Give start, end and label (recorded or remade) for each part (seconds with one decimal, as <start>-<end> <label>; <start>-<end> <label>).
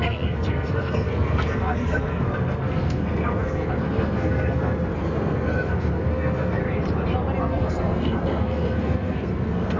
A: 0.0-6.6 remade; 6.6-7.4 recorded; 7.4-9.8 remade